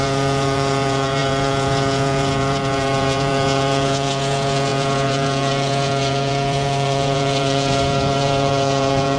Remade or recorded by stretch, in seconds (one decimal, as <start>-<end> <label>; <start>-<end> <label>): 0.0-9.2 remade